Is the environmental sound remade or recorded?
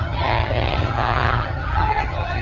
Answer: remade